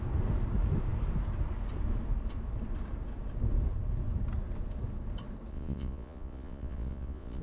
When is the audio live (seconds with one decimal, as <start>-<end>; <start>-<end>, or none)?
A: 0.0-5.5